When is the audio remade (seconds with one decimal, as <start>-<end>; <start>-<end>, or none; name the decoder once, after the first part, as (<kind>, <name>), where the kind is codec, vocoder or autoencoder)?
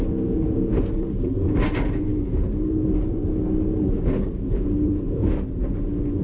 0.0-5.2 (vocoder, BigVGAN v2)